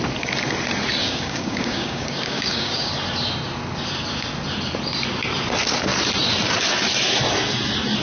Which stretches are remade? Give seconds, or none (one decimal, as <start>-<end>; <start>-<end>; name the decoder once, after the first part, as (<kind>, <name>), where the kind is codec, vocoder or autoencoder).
1.0-2.9 (codec, DAC)

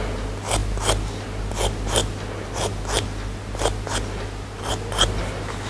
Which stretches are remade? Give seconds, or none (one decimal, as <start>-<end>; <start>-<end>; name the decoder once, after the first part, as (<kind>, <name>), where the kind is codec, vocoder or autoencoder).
none

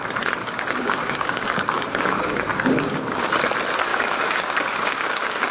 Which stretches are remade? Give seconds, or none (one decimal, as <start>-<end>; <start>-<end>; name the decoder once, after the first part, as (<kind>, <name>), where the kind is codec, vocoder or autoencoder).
0.4-3.2 (codec, DAC); 3.9-5.5

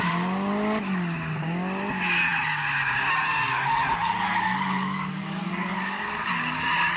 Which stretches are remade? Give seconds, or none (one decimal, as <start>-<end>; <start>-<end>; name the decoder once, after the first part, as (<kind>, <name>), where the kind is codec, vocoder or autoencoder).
3.5-6.6 (codec, DAC)

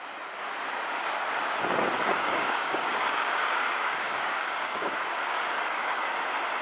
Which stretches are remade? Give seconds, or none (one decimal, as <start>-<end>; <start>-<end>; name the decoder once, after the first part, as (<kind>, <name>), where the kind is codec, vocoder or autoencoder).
2.1-6.1 (codec, DAC)